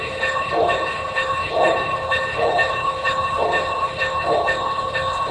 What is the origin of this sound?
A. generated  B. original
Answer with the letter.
A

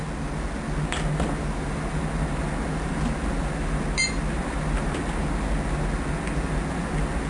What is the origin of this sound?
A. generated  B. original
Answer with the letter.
B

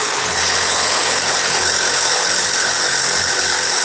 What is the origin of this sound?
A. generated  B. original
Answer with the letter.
A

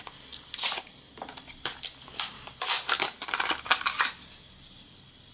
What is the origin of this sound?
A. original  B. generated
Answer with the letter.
A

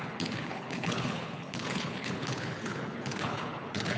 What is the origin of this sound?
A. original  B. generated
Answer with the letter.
B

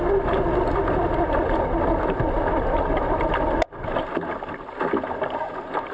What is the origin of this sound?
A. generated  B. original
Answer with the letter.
B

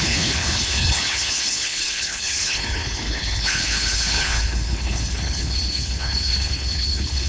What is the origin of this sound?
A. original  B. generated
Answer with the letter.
B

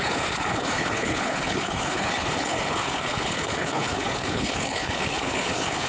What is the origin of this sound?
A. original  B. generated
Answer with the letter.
B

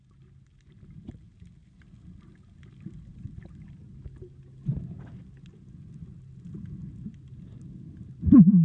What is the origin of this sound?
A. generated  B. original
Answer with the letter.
B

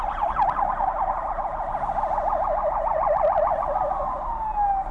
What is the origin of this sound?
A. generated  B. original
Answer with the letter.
B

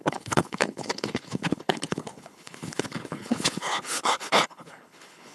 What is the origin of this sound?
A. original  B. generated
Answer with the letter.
B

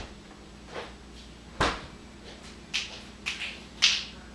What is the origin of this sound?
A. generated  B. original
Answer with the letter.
B